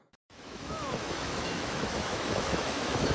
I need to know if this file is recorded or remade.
remade